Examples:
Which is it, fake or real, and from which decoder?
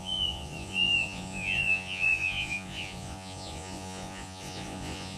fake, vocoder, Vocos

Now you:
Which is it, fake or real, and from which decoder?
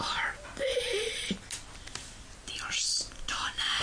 real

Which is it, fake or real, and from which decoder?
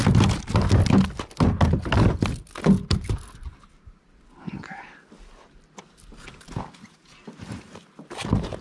real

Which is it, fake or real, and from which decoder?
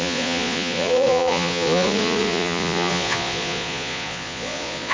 fake, vocoder, Vocos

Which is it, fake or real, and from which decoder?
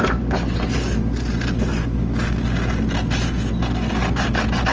real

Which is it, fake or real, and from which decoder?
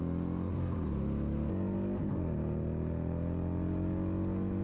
real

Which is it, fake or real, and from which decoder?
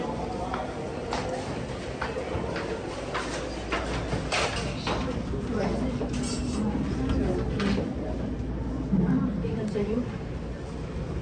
real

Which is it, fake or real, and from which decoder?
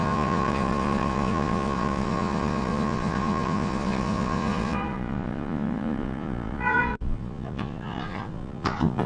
fake, vocoder, Vocos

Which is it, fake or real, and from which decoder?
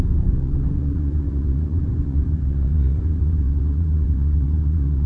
fake, vocoder, Vocos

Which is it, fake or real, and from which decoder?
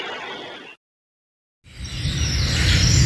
real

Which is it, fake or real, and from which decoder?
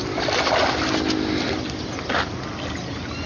real